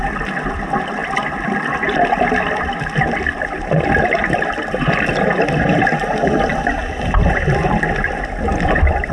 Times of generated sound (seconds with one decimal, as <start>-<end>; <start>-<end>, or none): none